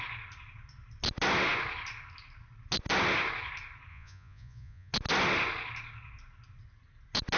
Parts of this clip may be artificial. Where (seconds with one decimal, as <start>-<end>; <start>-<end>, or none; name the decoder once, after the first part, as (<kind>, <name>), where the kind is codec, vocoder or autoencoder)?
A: 3.9-4.9 (vocoder, Vocos)